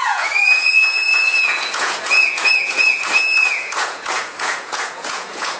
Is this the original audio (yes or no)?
no